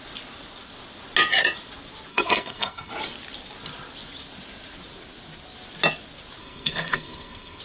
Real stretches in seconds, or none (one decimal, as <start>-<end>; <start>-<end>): 0.0-2.1; 2.9-6.4